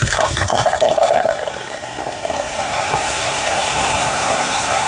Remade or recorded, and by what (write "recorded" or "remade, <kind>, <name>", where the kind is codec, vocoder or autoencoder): remade, codec, SNAC